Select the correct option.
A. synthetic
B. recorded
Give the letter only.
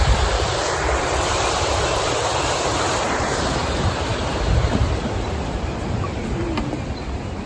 B